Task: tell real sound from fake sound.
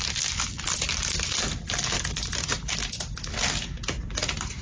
real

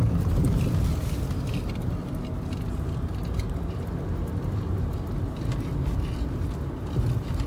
real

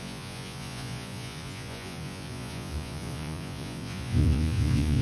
fake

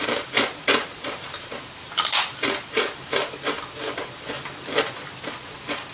fake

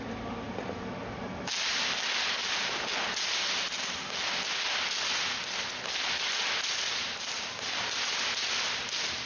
real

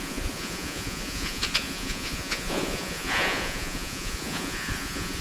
fake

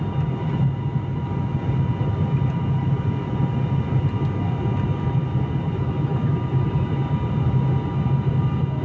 real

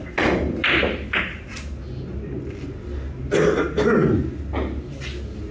real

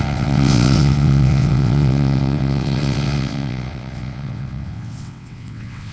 fake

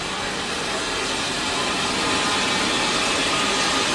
real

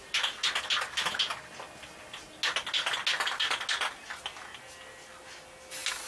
real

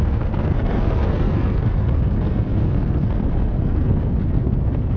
fake